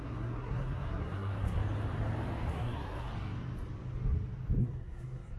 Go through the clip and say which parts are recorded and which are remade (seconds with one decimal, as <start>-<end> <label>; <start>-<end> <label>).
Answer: 0.0-1.6 remade; 1.6-2.5 recorded; 2.5-3.1 remade; 3.1-4.6 recorded; 4.6-5.4 remade

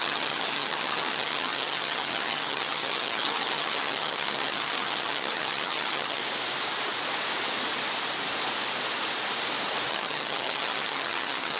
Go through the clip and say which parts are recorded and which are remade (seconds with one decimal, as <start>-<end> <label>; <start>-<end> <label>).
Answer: 0.0-6.2 remade; 6.2-9.9 recorded; 9.9-11.6 remade